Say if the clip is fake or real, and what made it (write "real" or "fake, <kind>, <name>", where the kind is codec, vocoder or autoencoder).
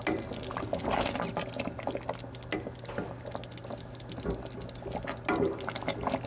real